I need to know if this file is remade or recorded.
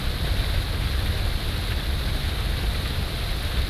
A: recorded